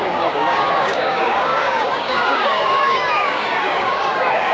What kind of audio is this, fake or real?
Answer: fake